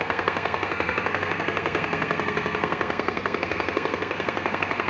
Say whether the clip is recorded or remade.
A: remade